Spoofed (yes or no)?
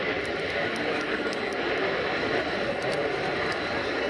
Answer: no